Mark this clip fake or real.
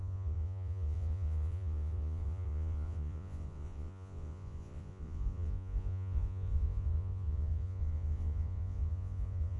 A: fake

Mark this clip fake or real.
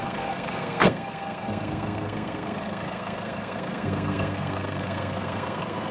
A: fake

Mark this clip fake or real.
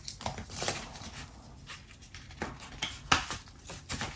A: real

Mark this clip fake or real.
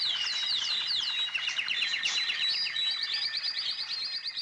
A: real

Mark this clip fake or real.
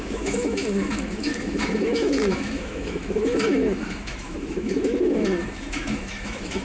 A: fake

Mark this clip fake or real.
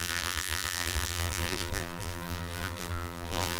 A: fake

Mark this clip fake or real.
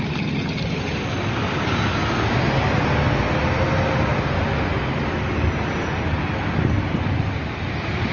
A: real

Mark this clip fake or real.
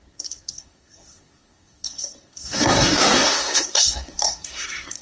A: fake